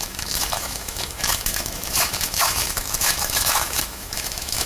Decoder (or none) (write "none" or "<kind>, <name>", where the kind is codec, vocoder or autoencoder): autoencoder, DAC-VAE